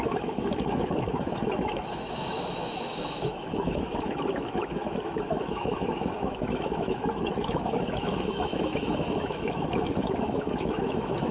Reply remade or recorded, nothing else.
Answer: remade